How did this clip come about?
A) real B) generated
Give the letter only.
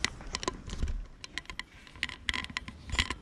A